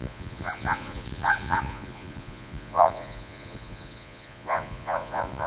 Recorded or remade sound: remade